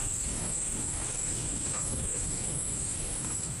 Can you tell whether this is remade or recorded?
remade